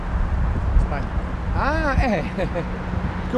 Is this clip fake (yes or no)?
no